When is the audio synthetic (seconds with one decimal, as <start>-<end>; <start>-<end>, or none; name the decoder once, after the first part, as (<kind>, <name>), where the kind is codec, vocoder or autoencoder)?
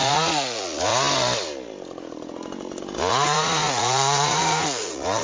0.0-0.9 (vocoder, Vocos); 3.1-5.2